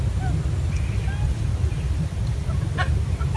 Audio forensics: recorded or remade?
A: recorded